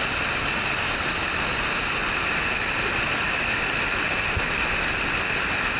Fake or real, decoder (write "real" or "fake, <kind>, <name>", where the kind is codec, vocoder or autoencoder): real